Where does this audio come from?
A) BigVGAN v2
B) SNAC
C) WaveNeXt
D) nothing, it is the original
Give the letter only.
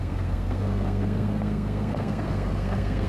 B